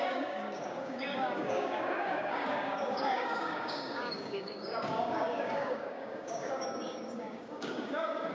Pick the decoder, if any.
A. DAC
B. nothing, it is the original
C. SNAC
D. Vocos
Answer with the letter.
A